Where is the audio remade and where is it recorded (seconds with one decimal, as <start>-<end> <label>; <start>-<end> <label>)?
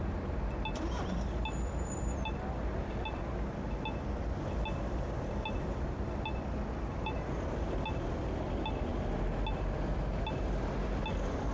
0.0-6.9 recorded; 6.9-7.5 remade; 7.5-11.5 recorded